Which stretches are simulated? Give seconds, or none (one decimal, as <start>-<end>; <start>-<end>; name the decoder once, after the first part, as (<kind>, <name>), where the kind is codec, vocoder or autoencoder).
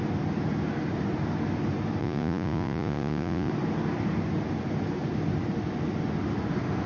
2.0-3.5 (vocoder, Vocos)